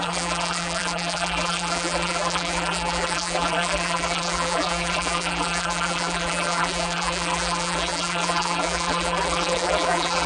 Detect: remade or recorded remade